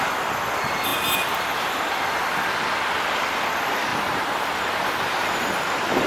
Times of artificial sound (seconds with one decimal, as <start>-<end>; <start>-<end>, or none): 3.9-6.1